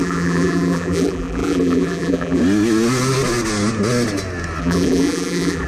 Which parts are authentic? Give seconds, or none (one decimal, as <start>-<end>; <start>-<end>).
2.4-4.6